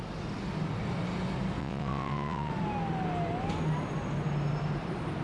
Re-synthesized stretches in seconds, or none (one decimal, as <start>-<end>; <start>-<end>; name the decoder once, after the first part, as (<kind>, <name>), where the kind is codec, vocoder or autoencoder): 1.6-2.5 (vocoder, WaveNeXt)

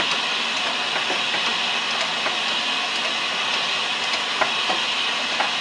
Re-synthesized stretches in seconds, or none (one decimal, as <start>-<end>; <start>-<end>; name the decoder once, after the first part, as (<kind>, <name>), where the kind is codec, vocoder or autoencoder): none

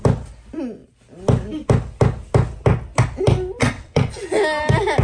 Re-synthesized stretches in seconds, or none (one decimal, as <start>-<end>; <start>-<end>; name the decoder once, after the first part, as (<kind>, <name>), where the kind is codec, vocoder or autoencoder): 3.6-4.1 (vocoder, WaveNeXt)

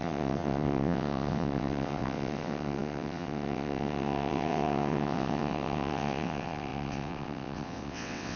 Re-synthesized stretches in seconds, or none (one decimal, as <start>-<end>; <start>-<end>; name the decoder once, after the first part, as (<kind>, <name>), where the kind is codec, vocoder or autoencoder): 0.0-8.4 (vocoder, WaveNeXt)

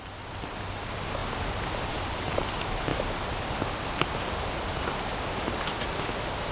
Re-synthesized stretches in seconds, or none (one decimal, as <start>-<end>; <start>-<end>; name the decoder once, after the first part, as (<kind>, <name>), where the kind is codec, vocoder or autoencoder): none

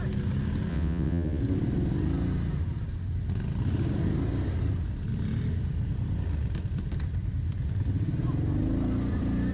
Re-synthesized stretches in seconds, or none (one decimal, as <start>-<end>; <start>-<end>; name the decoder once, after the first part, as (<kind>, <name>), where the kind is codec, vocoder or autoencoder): 0.7-1.4 (vocoder, WaveNeXt)

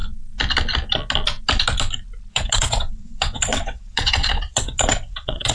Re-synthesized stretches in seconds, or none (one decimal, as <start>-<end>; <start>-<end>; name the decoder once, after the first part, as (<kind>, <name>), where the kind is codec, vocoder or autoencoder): 2.3-5.5 (vocoder, WaveNeXt)